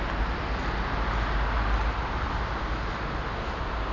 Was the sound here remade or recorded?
recorded